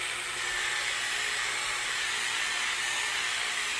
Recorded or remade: recorded